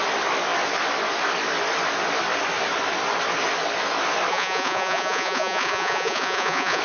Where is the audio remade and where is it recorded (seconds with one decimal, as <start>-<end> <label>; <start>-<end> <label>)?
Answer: 0.0-4.3 recorded; 4.3-6.8 remade